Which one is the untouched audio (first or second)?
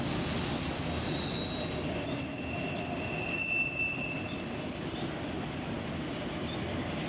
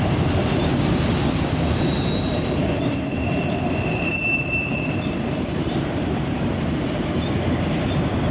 first